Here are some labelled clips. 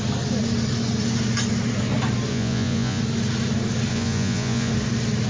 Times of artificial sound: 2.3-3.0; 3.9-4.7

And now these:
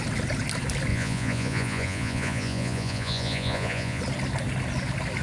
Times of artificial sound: 0.9-4.0

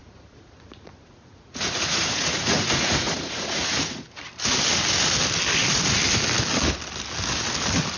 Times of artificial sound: 0.0-4.2